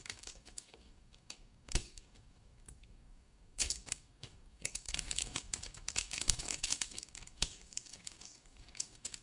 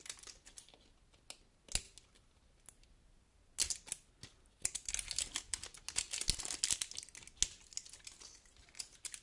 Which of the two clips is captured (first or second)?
second